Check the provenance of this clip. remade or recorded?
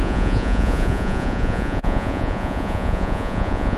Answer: remade